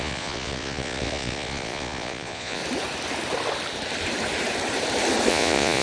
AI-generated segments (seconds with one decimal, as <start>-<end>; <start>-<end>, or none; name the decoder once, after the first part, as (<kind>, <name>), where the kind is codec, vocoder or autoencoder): 0.0-2.6 (vocoder, Vocos); 5.3-5.8